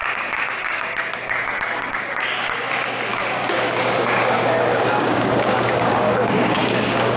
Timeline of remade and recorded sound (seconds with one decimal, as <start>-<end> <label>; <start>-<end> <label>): 0.0-2.4 remade; 2.4-3.1 recorded; 3.1-3.8 remade; 3.8-4.7 recorded; 4.7-7.2 remade